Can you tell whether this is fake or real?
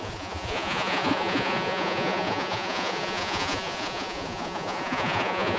fake